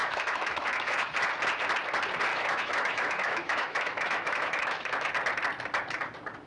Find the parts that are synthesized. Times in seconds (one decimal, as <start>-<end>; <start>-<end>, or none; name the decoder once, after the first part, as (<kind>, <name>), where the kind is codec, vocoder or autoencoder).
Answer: 0.0-1.1 (autoencoder, DAC-VAE); 2.3-5.1